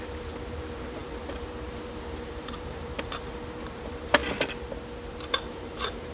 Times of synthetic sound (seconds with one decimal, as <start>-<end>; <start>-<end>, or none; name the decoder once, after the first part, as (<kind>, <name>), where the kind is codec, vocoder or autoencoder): 0.0-4.2 (vocoder, BigVGAN v2); 5.1-6.1